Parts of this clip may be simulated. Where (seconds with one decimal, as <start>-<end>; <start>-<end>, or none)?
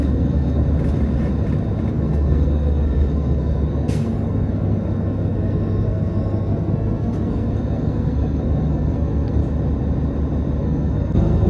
0.0-0.6; 1.9-9.4; 10.6-11.5